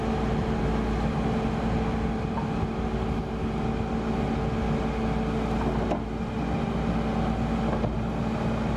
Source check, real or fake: real